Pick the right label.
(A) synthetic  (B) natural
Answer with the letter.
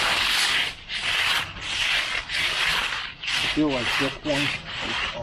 B